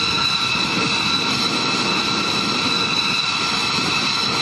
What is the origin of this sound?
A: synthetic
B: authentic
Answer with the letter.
B